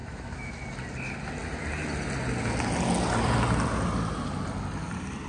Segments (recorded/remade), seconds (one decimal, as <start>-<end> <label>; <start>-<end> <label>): 0.0-0.6 remade; 0.6-5.3 recorded

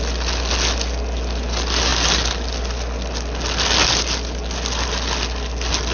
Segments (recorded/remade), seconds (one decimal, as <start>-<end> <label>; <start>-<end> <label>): 0.0-5.9 recorded

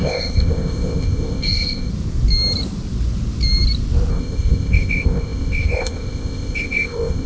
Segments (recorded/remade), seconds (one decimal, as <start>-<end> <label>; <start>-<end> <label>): 0.0-1.9 remade; 1.9-4.1 recorded; 4.1-7.3 remade

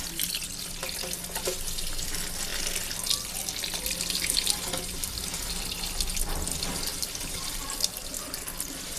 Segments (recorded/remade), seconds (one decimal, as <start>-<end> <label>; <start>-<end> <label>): 0.0-6.9 recorded; 6.9-8.1 remade; 8.1-9.0 recorded

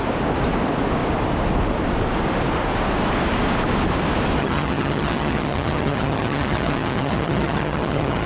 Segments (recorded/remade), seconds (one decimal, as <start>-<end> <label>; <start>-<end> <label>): 0.0-4.4 recorded; 4.4-8.3 remade

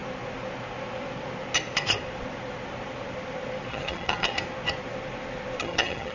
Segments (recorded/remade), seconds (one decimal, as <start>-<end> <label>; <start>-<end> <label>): 0.0-3.7 recorded; 3.7-4.3 remade; 4.3-5.6 recorded; 5.6-6.1 remade

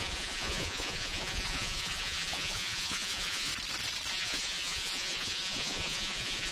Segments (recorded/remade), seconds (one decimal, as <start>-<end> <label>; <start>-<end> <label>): 0.0-3.5 remade; 3.5-4.1 recorded; 4.1-6.5 remade